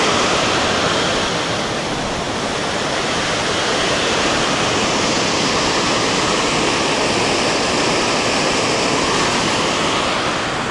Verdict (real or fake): real